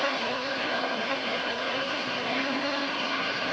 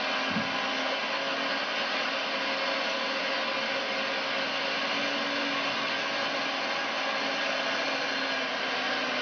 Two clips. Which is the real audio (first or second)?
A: second